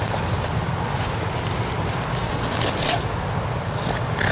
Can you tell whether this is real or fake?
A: real